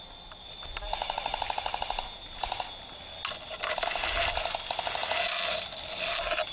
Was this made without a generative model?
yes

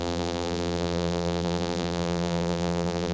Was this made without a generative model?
no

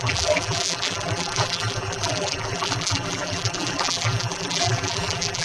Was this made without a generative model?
no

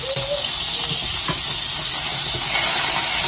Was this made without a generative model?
yes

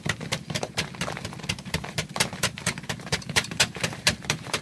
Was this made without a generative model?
no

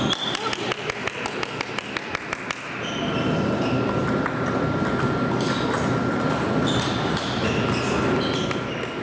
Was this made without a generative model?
no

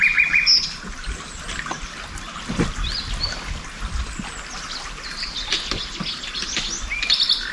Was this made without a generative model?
yes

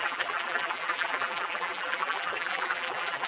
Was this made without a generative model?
no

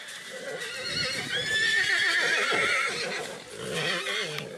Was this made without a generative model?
yes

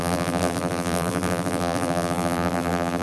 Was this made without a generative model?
no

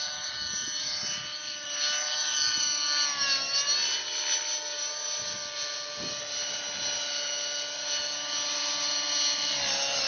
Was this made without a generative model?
yes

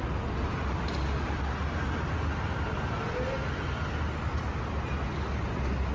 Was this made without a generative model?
yes